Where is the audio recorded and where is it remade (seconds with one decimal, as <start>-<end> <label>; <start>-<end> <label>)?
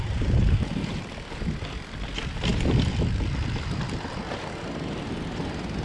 0.0-5.8 recorded